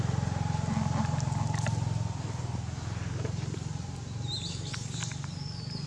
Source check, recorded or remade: recorded